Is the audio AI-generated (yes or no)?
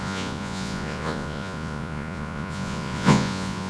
yes